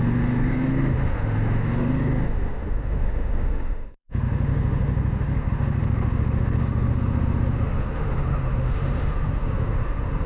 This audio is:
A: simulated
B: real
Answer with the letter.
A